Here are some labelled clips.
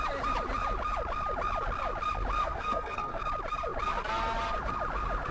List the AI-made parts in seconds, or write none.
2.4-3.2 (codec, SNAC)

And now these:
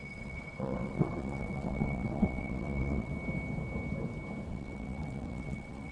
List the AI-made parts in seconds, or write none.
0.0-3.1 (vocoder, WaveNeXt); 4.5-5.9